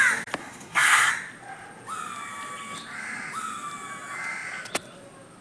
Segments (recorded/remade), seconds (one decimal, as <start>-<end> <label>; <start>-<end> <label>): 0.0-0.4 recorded; 0.4-1.1 remade; 1.1-5.4 recorded

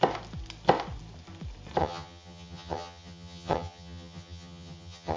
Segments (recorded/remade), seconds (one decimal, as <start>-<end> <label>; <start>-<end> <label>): 0.0-1.8 recorded; 1.8-5.2 remade